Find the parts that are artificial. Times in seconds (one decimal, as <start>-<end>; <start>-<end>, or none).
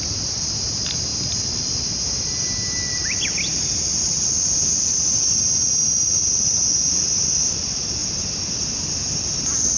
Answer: none